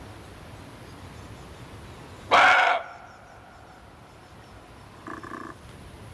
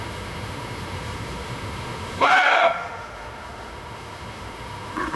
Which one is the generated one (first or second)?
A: second